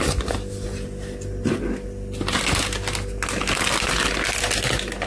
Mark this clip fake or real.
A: real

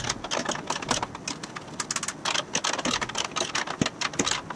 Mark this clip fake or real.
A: real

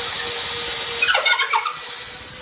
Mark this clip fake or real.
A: real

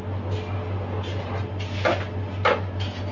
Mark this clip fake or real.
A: real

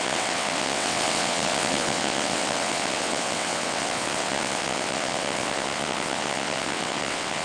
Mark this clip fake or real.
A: fake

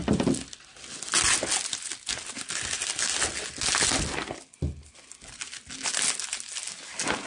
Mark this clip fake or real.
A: real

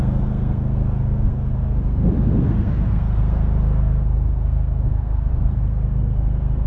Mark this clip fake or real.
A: fake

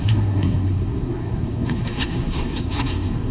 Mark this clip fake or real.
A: fake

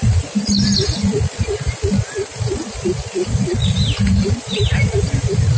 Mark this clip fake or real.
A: real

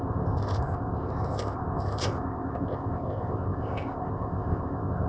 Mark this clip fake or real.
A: fake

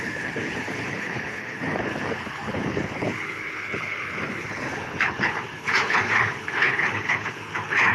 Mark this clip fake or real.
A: fake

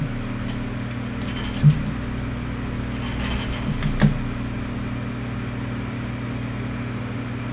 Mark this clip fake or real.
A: real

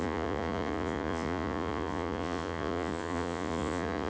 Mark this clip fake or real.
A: fake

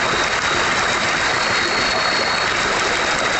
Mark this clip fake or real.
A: real